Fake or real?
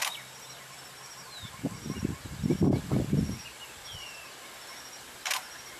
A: real